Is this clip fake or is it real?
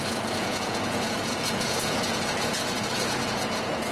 fake